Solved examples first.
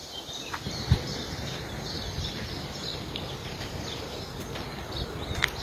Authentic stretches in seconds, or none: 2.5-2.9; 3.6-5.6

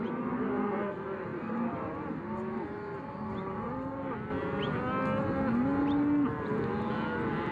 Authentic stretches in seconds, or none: 0.0-1.3; 2.1-7.5

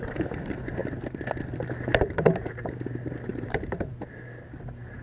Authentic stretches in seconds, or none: 0.0-1.9; 2.7-3.3; 3.8-5.0

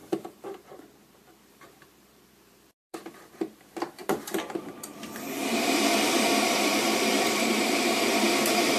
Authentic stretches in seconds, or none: none

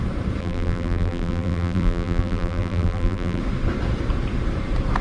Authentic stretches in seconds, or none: 0.0-0.4; 3.4-5.0

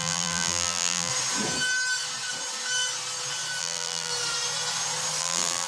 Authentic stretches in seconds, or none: 1.1-3.6; 4.1-5.2

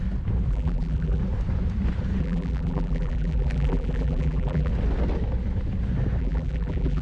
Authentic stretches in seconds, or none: 0.0-0.5; 1.2-2.2; 4.7-6.2